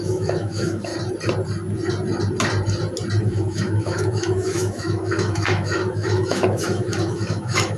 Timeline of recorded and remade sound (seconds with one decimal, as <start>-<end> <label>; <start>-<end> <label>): 0.0-0.9 remade; 0.9-3.2 recorded; 3.2-7.8 remade